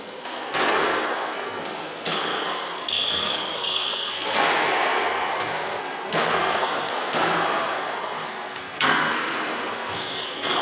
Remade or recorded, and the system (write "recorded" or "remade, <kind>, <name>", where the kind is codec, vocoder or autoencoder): remade, codec, SNAC